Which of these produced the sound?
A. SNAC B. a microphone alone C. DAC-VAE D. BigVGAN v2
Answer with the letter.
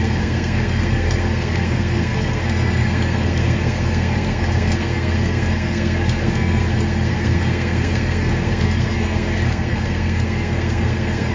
A